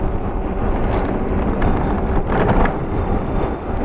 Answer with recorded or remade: remade